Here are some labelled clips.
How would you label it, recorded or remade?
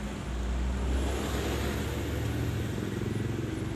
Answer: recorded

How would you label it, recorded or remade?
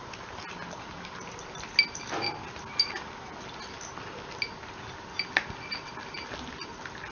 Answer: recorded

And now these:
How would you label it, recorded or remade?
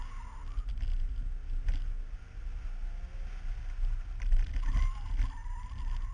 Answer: recorded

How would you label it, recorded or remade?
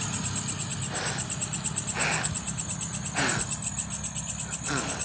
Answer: recorded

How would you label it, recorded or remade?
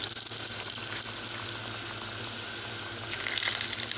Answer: recorded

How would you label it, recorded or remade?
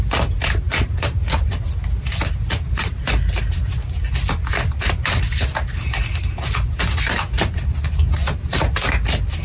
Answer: recorded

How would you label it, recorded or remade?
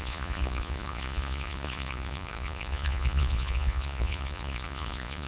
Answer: remade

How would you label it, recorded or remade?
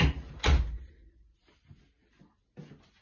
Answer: recorded